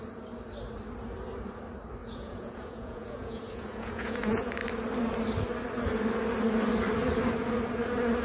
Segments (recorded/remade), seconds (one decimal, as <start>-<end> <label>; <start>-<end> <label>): 0.0-2.0 recorded; 2.0-4.5 remade; 4.5-8.2 recorded